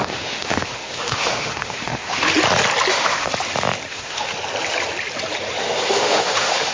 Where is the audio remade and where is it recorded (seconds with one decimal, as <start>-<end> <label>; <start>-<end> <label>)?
0.0-2.3 remade; 2.3-2.9 recorded; 2.9-3.3 remade; 3.3-3.9 recorded; 3.9-4.3 remade; 4.3-5.6 recorded; 5.6-6.7 remade